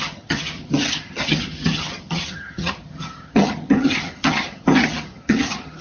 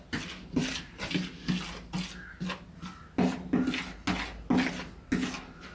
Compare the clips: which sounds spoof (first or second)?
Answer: first